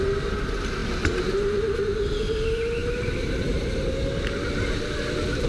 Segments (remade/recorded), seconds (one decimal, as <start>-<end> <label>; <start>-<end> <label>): 0.0-5.5 recorded